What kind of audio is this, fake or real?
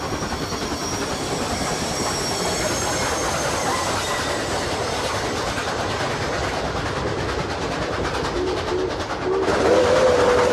real